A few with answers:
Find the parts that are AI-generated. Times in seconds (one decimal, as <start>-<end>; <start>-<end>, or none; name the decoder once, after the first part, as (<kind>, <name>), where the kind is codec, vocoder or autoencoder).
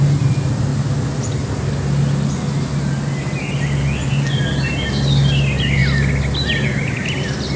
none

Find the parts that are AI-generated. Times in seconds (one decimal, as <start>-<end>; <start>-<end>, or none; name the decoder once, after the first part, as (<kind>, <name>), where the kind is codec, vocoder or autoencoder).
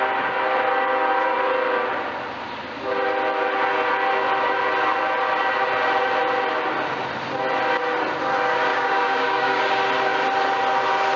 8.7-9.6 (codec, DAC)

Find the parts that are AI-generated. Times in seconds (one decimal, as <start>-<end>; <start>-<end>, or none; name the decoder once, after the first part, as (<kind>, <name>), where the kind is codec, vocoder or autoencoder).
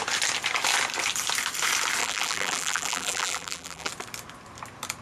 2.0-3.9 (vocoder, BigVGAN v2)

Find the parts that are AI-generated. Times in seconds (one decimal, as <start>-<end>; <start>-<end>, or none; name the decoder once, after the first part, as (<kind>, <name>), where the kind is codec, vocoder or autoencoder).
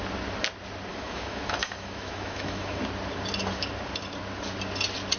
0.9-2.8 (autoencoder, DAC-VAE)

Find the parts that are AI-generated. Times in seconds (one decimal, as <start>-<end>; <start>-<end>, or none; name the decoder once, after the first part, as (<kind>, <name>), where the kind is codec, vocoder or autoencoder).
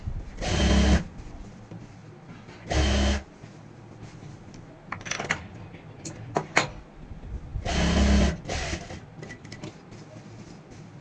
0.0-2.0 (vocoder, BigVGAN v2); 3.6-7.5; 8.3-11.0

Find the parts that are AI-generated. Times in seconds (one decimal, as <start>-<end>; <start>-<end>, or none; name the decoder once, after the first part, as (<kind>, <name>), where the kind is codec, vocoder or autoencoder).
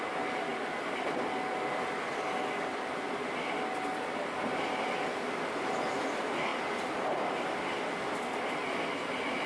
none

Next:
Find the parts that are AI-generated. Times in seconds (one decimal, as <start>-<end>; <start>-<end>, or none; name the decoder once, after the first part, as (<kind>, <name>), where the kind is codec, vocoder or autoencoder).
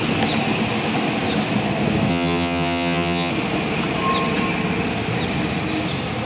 2.1-3.3 (vocoder, HiFi-GAN)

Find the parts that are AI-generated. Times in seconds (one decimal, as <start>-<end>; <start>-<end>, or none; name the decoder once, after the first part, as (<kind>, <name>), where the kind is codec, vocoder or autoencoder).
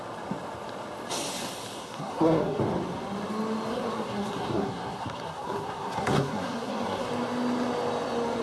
1.8-2.6 (codec, SNAC); 3.7-7.1